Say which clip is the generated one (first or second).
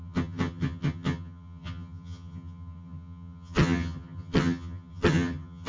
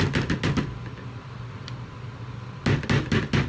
first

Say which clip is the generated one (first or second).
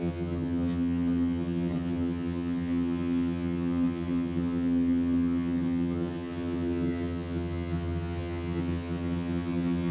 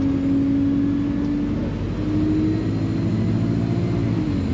first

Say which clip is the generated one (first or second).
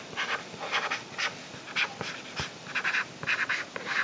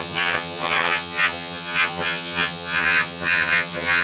second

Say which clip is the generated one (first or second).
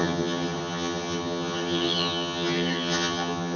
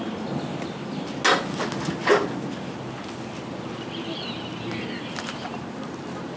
first